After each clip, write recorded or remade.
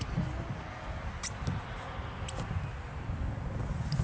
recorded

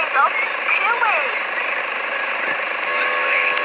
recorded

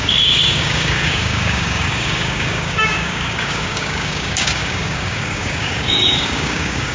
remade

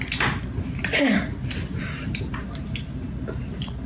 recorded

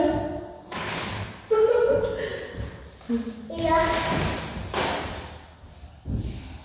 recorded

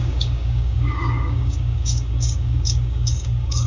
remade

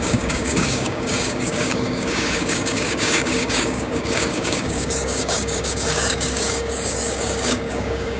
remade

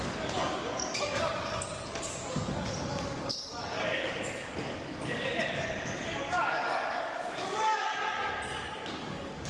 remade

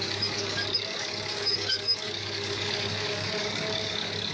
remade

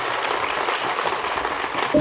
recorded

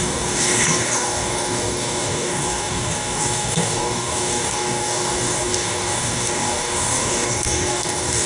remade